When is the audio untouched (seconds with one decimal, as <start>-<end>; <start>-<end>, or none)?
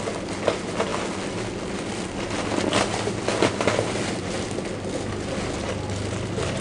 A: 0.0-6.6